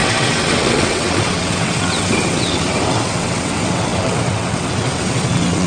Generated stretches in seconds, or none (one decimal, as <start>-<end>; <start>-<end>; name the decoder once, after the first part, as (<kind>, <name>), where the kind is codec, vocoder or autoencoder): 0.0-5.7 (vocoder, WaveNeXt)